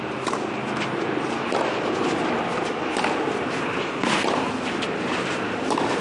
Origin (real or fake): real